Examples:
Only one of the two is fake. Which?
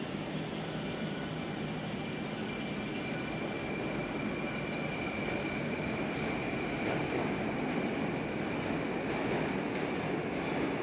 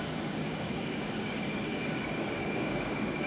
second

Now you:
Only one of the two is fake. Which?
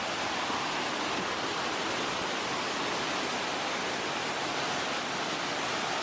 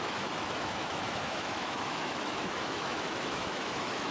second